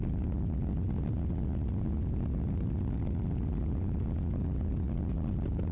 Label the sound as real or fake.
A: real